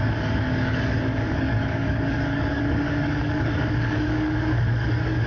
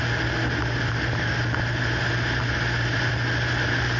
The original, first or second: second